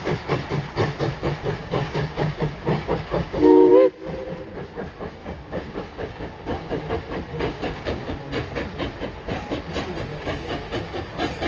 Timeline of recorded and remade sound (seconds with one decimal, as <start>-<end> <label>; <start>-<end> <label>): 0.0-1.6 recorded; 1.6-3.7 remade; 3.7-5.2 recorded; 5.2-6.8 remade; 6.8-7.3 recorded; 7.3-8.1 remade; 8.1-10.1 recorded; 10.1-11.1 remade; 11.1-11.5 recorded